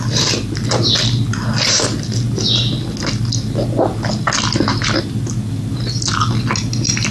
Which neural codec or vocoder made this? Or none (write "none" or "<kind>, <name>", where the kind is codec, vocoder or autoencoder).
none